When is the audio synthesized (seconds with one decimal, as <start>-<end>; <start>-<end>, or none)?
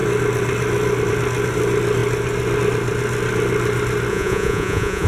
4.1-5.1